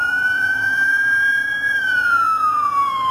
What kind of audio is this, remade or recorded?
remade